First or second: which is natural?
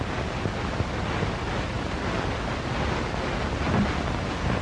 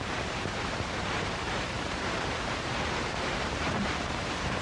first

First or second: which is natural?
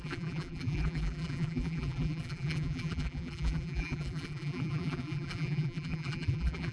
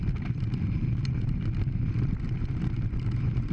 second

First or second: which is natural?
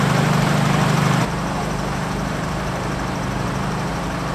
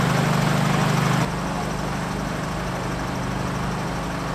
second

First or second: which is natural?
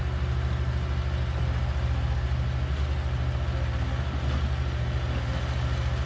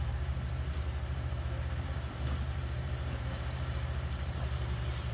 first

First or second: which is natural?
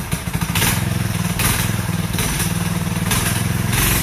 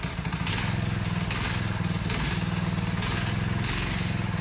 second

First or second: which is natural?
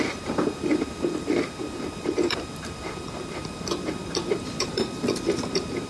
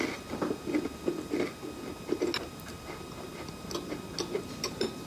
second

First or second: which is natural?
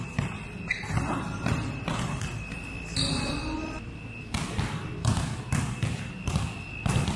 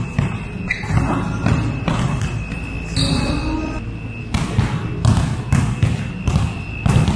second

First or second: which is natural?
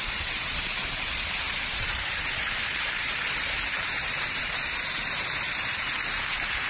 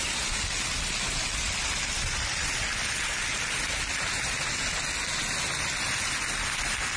second